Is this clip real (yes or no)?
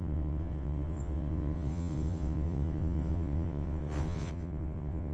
no